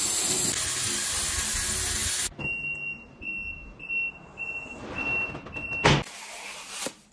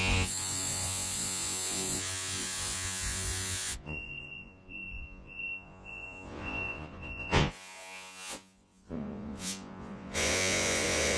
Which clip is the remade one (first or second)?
second